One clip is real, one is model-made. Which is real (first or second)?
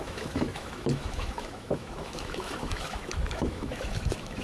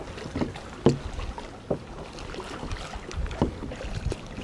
second